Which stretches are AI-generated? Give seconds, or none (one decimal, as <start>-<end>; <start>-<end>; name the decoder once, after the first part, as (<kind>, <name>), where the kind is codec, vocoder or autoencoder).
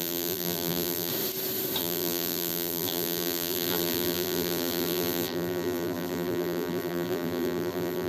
0.0-1.1 (vocoder, BigVGAN v2); 1.8-8.1